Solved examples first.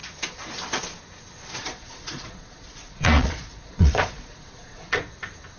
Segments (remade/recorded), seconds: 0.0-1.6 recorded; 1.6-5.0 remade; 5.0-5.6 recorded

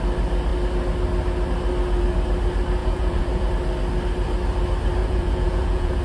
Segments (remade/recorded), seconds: 0.0-2.8 recorded; 2.8-3.5 remade; 3.5-5.0 recorded; 5.0-6.0 remade

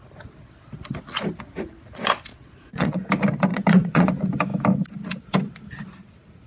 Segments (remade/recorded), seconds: 0.0-2.3 recorded; 2.3-3.1 remade; 3.1-3.5 recorded; 3.5-4.1 remade; 4.1-6.5 recorded

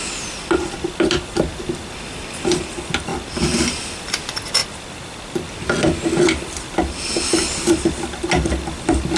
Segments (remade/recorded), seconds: 0.0-9.2 recorded

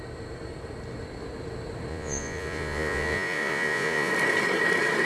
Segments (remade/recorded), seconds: 0.0-1.9 recorded; 1.9-4.1 remade; 4.1-5.1 recorded